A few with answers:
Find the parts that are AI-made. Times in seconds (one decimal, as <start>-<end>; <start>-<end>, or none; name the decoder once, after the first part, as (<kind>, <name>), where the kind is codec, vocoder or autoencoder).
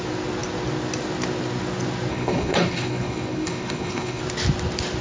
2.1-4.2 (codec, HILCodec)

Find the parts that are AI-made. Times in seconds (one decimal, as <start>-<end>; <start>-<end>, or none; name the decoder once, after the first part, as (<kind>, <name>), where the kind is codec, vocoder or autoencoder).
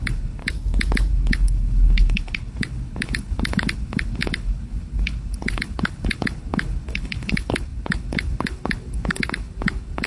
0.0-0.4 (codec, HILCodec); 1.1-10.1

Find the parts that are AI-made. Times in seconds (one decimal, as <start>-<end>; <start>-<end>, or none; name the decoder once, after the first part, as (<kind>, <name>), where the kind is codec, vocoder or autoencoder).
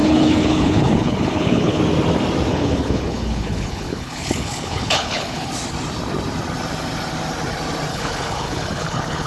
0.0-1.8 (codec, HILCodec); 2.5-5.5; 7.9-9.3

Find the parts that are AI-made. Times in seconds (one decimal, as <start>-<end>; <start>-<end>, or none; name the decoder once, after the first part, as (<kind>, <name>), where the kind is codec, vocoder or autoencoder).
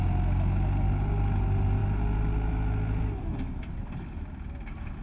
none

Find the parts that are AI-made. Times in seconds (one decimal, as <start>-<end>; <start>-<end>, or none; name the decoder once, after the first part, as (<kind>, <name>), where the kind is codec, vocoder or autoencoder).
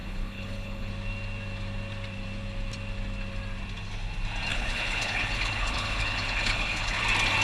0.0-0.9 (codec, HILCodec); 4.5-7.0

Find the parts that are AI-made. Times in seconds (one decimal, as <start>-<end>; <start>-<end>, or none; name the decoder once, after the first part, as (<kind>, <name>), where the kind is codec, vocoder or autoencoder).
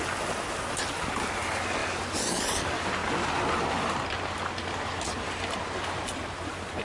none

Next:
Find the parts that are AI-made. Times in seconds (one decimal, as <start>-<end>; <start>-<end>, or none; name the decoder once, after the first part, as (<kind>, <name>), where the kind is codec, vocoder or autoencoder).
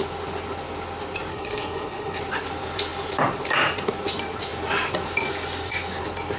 1.3-2.2 (codec, HILCodec)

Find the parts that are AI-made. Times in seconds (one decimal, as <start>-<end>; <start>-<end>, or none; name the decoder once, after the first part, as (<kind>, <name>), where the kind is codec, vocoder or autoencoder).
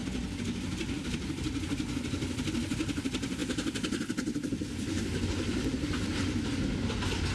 none